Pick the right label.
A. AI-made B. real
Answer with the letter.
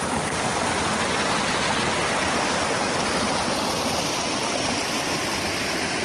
B